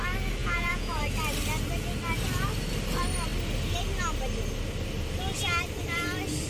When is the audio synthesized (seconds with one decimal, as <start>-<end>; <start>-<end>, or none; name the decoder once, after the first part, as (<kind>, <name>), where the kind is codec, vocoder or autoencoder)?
0.4-1.0 (vocoder, Vocos)